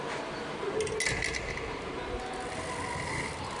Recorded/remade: recorded